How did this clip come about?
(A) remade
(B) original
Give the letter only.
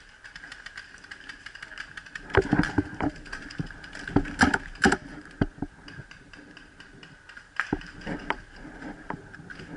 B